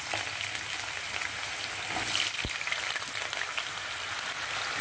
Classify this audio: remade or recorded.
recorded